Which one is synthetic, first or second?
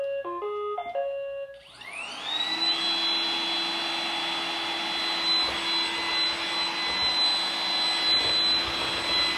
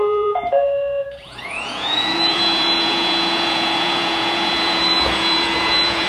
second